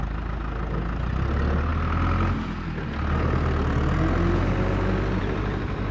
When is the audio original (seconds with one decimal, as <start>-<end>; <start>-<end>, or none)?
0.0-5.9